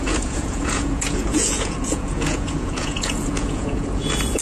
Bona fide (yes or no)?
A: no